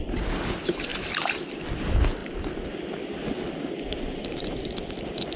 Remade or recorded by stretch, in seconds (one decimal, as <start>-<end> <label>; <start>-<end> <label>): 0.0-5.4 recorded